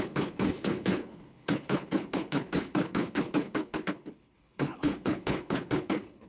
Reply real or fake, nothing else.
fake